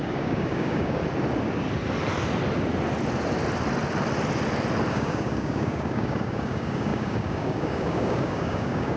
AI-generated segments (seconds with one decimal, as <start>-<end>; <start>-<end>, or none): 0.0-1.0; 4.9-9.0